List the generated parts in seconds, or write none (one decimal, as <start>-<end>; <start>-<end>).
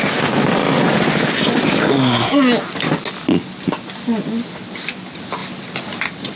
none